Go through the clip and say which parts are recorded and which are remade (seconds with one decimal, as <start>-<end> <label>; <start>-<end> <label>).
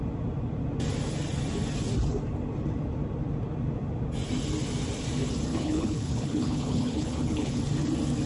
0.0-5.5 recorded; 5.5-7.6 remade; 7.6-8.3 recorded